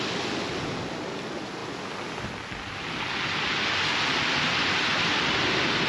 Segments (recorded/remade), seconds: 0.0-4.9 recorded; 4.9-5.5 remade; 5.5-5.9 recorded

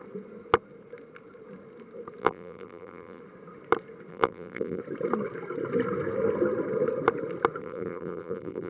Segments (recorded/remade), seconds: 0.0-2.2 recorded; 2.2-3.2 remade; 3.2-4.1 recorded; 4.1-4.8 remade; 4.8-7.6 recorded; 7.6-8.7 remade

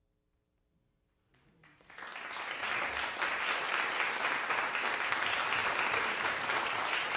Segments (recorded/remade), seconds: 0.0-5.6 recorded; 5.6-6.7 remade; 6.7-7.2 recorded

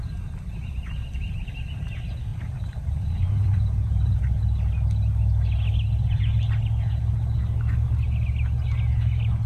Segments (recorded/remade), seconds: 0.0-2.3 recorded; 2.3-4.2 remade; 4.2-9.5 recorded